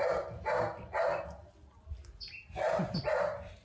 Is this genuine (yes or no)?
yes